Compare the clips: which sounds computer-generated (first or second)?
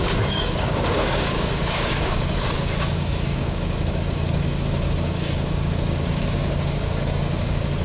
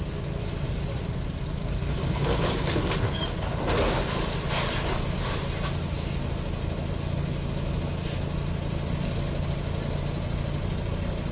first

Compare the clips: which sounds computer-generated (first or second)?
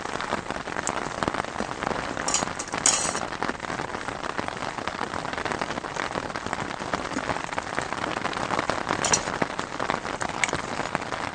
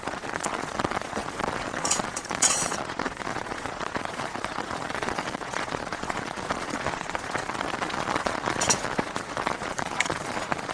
second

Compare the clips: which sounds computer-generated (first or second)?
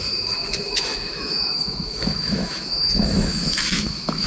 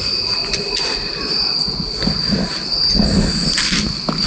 first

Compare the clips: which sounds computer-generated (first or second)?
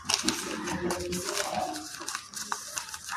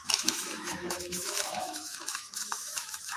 second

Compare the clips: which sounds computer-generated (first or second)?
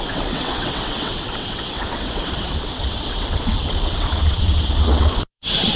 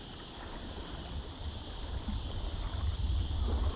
first